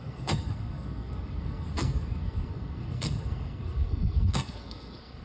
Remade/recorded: remade